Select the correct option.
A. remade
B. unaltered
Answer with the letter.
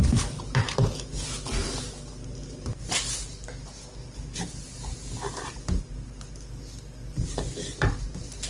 B